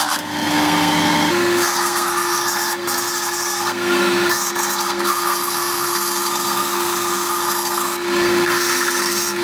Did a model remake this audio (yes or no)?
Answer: yes